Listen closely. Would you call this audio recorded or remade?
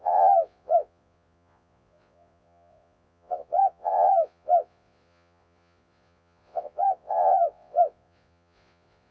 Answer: remade